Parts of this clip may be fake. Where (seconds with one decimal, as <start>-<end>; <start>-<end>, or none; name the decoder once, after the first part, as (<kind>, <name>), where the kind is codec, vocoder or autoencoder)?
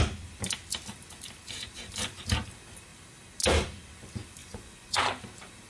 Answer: 4.4-5.0 (vocoder, Vocos)